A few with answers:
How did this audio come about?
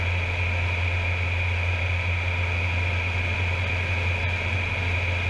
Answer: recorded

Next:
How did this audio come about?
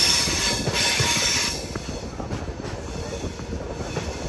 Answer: recorded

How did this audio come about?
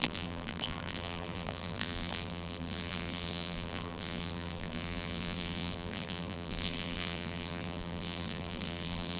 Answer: remade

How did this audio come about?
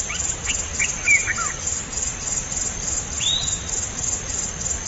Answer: remade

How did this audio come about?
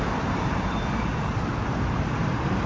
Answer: remade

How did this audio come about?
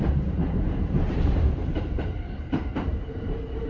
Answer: remade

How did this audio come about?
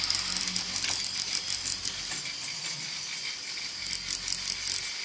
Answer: recorded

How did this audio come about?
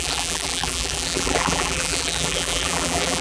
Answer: remade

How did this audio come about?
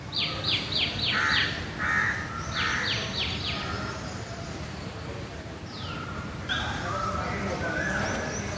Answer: recorded